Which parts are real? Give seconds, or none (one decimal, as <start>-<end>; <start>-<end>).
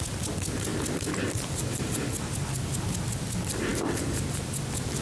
0.0-5.0